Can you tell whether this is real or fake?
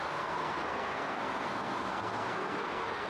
fake